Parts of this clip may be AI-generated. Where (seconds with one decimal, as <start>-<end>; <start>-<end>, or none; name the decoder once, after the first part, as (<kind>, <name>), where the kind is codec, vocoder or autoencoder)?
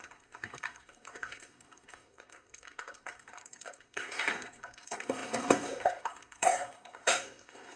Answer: 0.0-7.8 (codec, SNAC)